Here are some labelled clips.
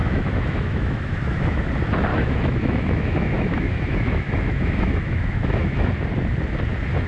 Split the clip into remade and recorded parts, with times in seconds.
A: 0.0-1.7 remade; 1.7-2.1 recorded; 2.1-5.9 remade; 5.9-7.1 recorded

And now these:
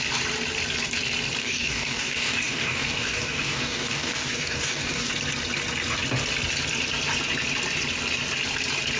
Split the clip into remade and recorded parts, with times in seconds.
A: 0.0-1.4 recorded; 1.4-5.1 remade; 5.1-9.0 recorded

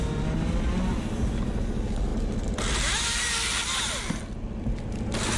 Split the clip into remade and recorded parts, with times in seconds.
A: 0.0-5.4 recorded

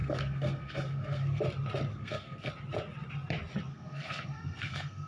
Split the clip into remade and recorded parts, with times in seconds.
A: 0.0-1.4 remade; 1.4-1.9 recorded; 1.9-2.5 remade; 2.5-3.7 recorded; 3.7-5.1 remade

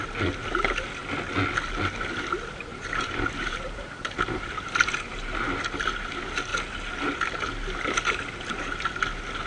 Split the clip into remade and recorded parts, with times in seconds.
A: 0.0-2.7 recorded; 2.7-5.4 remade; 5.4-9.5 recorded

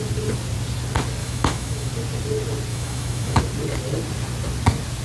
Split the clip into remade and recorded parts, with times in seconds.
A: 0.0-1.2 recorded; 1.2-1.9 remade; 1.9-2.7 recorded; 2.7-3.4 remade; 3.4-5.0 recorded

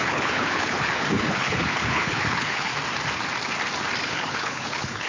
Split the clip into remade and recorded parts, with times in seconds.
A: 0.0-2.7 remade; 2.7-4.0 recorded; 4.0-5.1 remade